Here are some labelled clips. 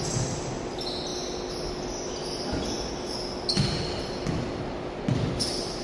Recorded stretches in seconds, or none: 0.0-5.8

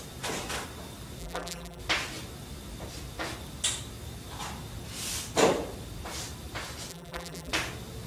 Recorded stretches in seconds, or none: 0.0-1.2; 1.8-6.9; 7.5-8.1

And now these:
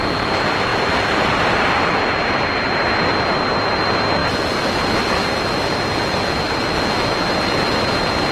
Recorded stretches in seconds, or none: 0.0-8.3

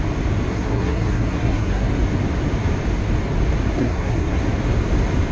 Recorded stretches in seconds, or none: 0.0-0.5; 1.9-3.8; 4.4-5.3

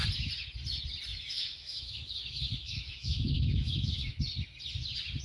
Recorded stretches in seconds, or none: 0.0-1.1; 4.2-5.2

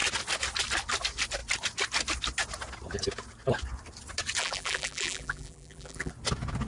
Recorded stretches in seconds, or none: 0.0-4.4; 6.1-6.7

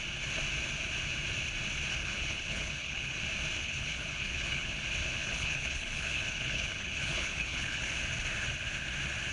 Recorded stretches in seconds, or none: 0.0-2.0; 3.2-3.6; 4.7-5.2; 7.9-9.3